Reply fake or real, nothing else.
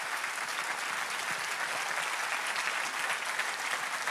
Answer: real